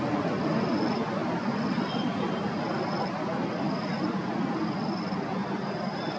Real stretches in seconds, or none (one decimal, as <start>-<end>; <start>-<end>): 0.0-5.4